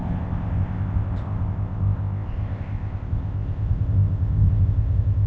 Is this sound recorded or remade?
remade